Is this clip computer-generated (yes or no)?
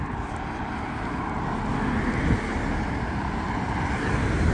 no